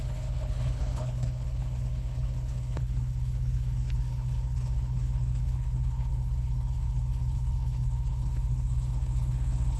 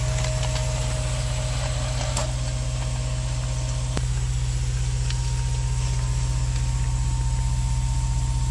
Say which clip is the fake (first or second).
first